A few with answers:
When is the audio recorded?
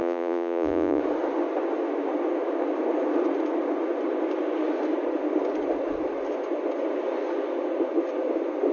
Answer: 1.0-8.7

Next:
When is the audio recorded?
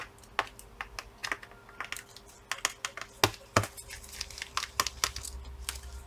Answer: 0.0-6.1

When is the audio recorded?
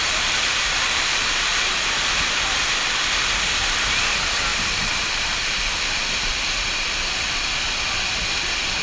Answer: 1.9-4.5; 6.4-8.8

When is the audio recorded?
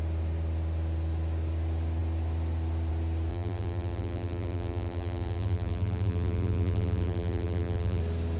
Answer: 0.0-3.3; 8.0-8.4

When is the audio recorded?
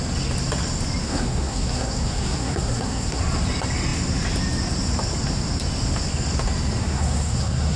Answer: 0.0-1.0; 3.2-6.8